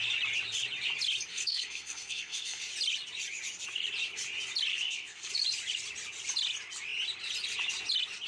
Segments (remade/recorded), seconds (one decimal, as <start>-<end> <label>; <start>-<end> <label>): 0.0-1.3 recorded; 1.3-2.6 remade; 2.6-4.7 recorded; 4.7-5.3 remade; 5.3-8.3 recorded